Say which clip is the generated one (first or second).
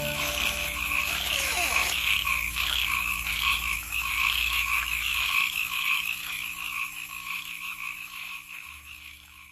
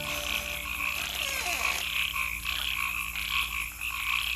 first